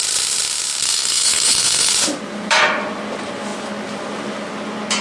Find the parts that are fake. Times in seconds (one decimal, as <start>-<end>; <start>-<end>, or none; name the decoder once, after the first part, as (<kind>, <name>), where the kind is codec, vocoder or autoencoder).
0.8-1.9 (codec, SNAC)